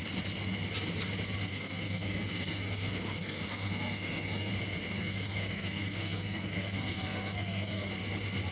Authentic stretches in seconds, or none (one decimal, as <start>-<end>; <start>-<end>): 0.0-1.5; 4.5-4.9; 7.9-8.5